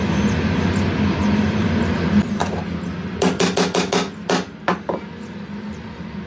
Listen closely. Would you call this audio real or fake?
real